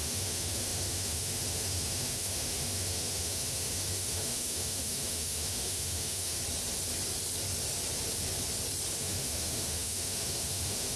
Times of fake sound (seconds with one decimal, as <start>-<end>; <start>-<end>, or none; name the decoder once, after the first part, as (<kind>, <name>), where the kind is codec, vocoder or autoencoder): 0.0-6.4 (autoencoder, DAC-VAE); 9.0-11.0